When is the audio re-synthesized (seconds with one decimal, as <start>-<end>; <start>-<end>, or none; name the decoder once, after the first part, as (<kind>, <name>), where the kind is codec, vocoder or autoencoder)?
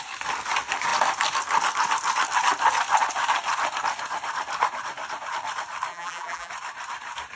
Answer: 5.9-6.5 (vocoder, BigVGAN v2)